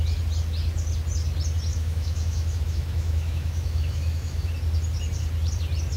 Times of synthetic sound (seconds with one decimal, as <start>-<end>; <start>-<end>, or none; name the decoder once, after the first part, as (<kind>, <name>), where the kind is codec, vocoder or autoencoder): 1.7-4.5 (autoencoder, DAC-VAE)